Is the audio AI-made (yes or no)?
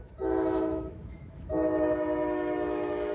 yes